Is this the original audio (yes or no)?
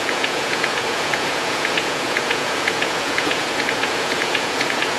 no